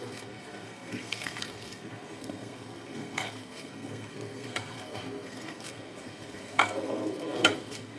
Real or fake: fake